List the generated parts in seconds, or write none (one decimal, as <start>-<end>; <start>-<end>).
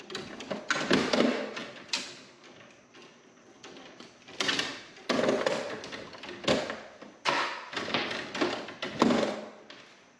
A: none